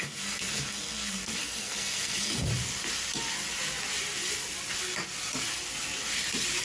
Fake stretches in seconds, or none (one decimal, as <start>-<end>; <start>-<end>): 0.0-2.5